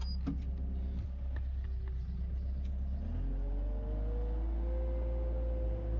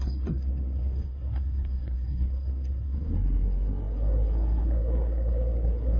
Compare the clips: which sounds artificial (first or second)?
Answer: second